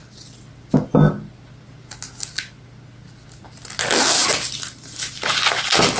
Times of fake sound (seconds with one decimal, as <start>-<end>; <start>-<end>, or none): none